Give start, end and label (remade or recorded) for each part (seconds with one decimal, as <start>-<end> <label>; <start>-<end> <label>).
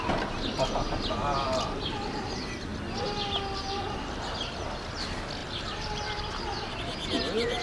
0.0-5.4 recorded; 5.4-6.3 remade; 6.3-7.6 recorded